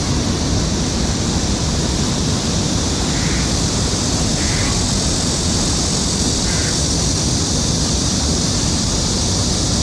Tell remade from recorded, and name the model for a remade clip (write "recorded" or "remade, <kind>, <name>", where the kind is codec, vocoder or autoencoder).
remade, vocoder, BigVGAN v2